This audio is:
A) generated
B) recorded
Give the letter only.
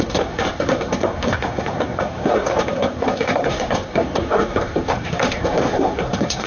A